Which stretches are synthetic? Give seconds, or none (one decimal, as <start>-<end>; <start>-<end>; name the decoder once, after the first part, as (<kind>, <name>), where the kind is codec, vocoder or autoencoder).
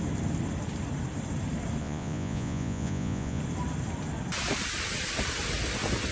1.8-3.4 (vocoder, Vocos)